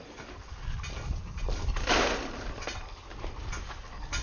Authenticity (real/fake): real